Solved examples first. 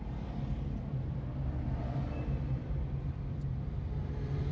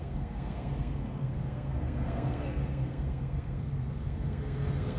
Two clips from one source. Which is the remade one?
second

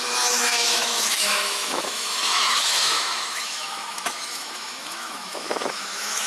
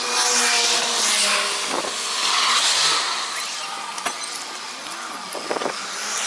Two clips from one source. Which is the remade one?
first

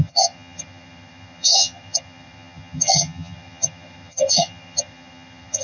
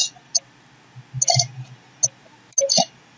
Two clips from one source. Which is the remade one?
first